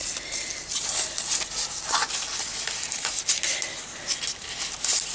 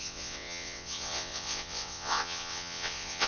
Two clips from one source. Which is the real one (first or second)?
first